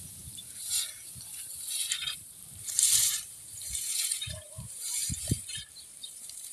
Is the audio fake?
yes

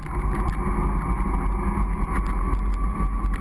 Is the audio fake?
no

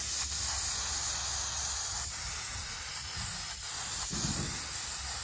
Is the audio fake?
no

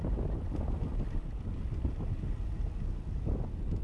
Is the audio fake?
no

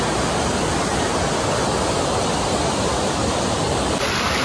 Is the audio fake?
no